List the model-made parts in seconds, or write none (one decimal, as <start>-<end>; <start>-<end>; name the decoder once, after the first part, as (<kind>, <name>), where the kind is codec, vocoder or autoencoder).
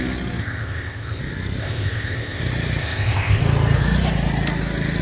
0.4-1.2 (codec, ZipCodec); 1.6-2.4; 2.8-3.4